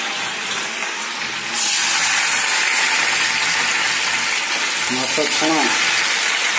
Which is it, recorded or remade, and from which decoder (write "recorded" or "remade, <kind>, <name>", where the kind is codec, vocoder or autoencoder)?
remade, vocoder, BigVGAN v2